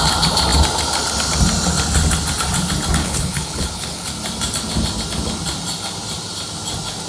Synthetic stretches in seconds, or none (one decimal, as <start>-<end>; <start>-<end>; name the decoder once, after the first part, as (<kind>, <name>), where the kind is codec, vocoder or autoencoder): 3.0-4.1 (codec, HILCodec)